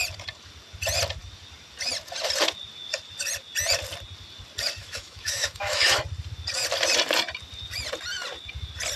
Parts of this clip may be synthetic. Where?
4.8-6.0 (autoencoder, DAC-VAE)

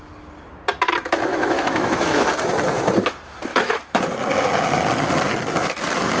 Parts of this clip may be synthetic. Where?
1.3-2.3 (autoencoder, DAC-VAE); 3.5-4.0